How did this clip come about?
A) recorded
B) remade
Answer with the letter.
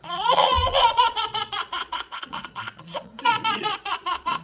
B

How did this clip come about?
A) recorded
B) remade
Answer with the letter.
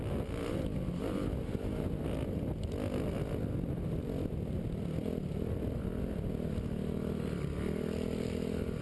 A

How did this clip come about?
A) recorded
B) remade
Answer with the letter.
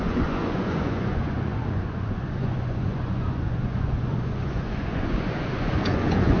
B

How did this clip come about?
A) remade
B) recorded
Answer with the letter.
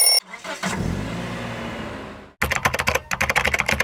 B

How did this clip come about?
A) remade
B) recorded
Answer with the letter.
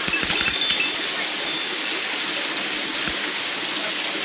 B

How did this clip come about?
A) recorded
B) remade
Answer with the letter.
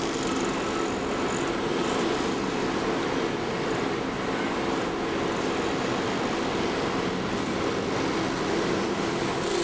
A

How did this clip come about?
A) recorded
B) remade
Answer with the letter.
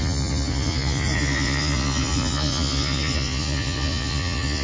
B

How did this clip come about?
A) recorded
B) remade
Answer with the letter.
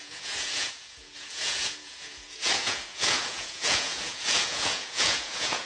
B